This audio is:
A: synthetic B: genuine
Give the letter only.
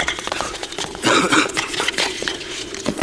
A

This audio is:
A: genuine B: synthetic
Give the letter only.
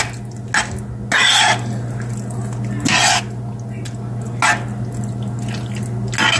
A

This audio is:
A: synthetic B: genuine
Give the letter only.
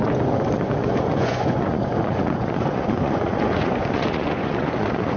A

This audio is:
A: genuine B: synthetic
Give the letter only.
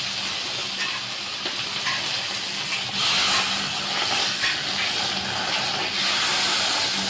A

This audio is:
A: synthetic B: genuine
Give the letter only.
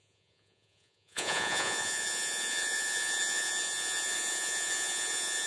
A